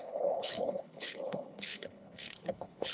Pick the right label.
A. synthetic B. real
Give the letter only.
A